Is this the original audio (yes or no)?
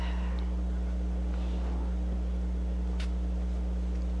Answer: yes